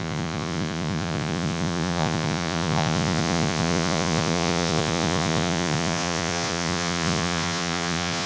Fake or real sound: fake